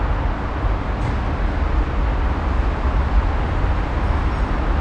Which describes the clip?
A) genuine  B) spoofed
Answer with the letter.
A